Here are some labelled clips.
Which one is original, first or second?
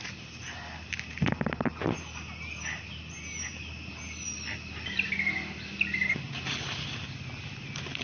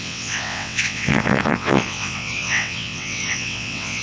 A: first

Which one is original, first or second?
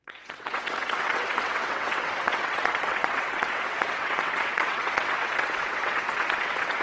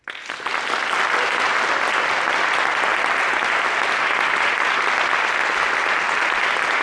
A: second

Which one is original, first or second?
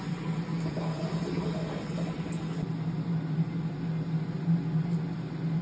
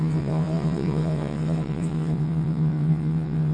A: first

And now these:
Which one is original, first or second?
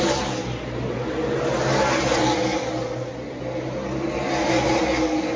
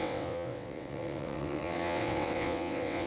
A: first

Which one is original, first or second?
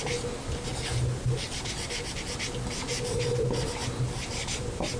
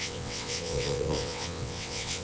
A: first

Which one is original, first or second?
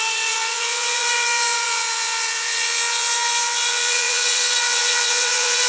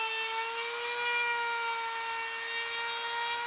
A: second